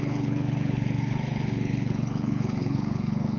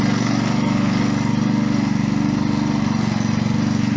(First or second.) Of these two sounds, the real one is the second